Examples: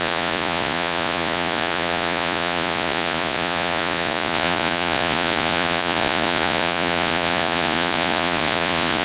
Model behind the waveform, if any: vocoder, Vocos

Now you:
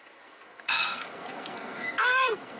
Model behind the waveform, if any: codec, SNAC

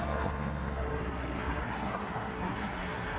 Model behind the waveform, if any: codec, SNAC